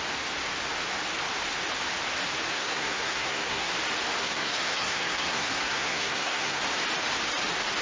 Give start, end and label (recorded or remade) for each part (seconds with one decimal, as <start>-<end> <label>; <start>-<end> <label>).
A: 0.0-2.5 recorded; 2.5-3.7 remade; 3.7-4.2 recorded; 4.2-6.6 remade; 6.6-7.8 recorded